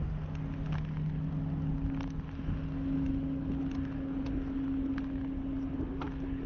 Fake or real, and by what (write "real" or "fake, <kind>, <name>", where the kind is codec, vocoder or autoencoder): real